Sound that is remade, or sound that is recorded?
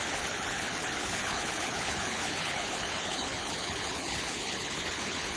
remade